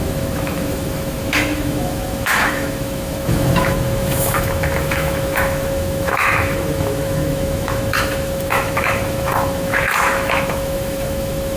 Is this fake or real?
fake